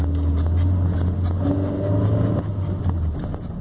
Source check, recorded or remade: recorded